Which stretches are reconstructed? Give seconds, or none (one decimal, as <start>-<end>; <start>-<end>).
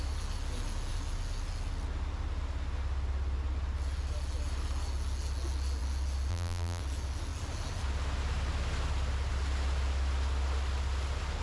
6.3-6.8